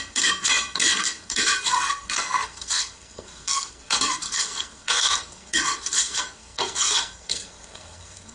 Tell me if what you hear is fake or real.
fake